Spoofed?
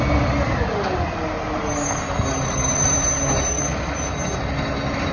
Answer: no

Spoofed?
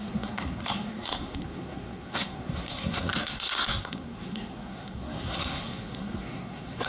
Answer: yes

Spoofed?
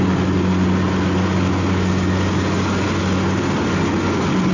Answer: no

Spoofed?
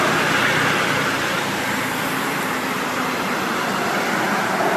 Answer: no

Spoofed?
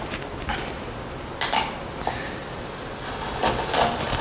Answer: no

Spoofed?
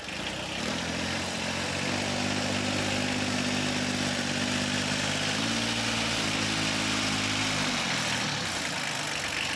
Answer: no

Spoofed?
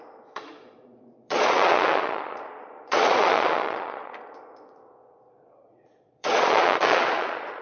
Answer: yes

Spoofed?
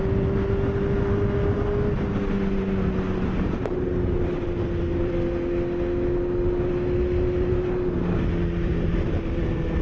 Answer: no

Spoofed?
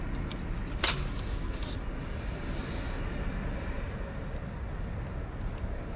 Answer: no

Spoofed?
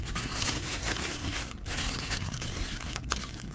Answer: yes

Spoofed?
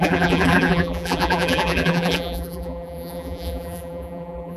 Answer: yes